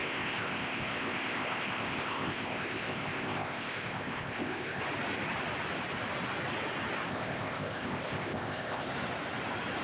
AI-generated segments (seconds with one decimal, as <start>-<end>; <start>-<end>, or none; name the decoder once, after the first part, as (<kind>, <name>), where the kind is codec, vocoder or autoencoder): 0.0-4.8 (codec, ZipCodec); 7.1-8.9